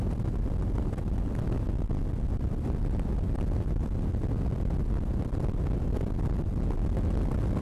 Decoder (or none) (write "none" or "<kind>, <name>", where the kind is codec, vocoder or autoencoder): none